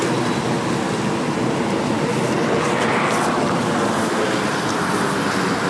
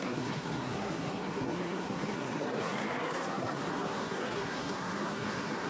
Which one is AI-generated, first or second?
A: second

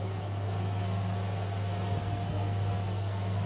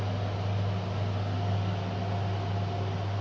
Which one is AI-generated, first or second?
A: first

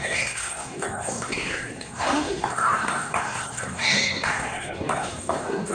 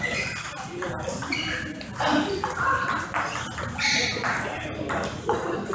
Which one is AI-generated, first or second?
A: first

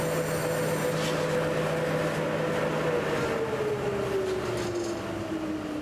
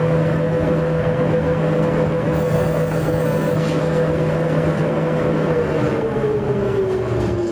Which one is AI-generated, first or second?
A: second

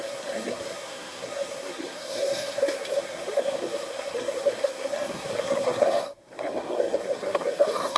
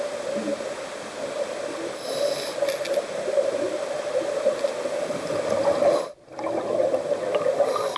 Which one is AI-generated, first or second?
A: first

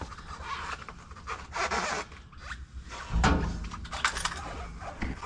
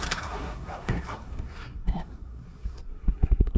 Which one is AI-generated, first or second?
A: second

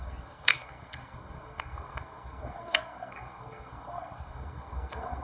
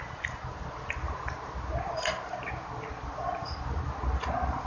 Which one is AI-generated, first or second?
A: first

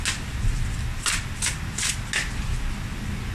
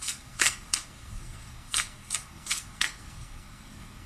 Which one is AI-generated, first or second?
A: second